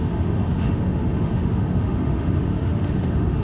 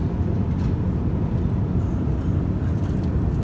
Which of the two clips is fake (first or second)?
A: first